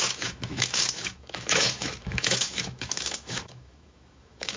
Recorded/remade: remade